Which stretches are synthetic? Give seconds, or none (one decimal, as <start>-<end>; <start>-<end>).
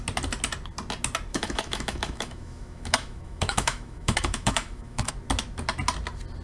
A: 1.3-5.1